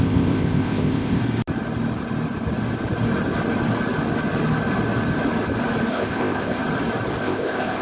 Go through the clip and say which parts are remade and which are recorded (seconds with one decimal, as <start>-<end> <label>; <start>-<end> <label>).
0.0-1.2 remade; 1.2-5.9 recorded; 5.9-6.6 remade; 6.6-7.2 recorded; 7.2-7.8 remade